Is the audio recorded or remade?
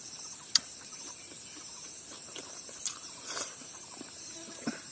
remade